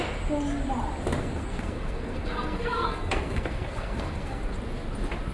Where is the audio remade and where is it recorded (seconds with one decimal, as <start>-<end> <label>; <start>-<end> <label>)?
0.0-1.2 recorded; 1.2-4.4 remade; 4.4-5.3 recorded